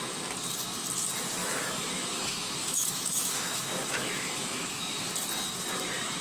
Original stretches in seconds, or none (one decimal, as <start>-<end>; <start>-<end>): 0.0-1.4; 5.1-6.2